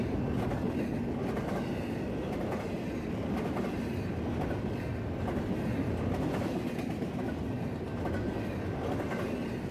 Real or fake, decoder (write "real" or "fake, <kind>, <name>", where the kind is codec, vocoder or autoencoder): real